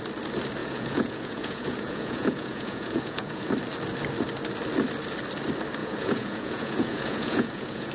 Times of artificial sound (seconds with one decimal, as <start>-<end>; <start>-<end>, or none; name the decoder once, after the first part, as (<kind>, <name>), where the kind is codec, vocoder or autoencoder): 0.6-3.5 (vocoder, Vocos); 5.8-7.9